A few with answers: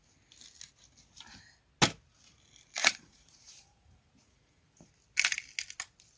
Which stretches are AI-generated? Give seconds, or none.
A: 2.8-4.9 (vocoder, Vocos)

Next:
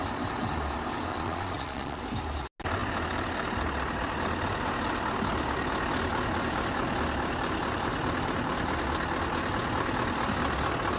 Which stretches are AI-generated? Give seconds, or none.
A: 1.1-2.0 (vocoder, Vocos)

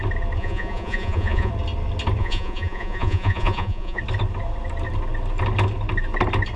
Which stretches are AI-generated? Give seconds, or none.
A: 0.4-1.5 (vocoder, Vocos); 2.2-4.0

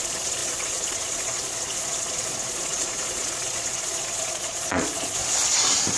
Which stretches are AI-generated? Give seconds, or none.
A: 0.0-5.2 (vocoder, Vocos)

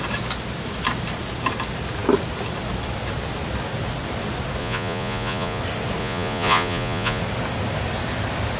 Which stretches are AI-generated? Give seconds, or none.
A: 4.6-5.6 (vocoder, Vocos); 6.0-7.2

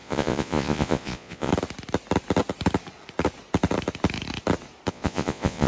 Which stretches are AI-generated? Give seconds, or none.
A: 0.0-1.5 (vocoder, Vocos); 4.9-5.7

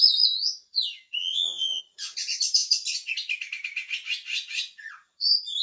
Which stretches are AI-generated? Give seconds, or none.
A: 1.2-1.8 (vocoder, Vocos)

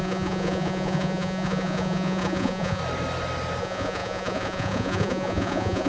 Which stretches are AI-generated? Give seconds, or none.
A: 0.0-2.8 (vocoder, Vocos); 3.6-5.9